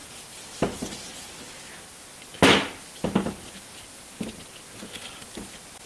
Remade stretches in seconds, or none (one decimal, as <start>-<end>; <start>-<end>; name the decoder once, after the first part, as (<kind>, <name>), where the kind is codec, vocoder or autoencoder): none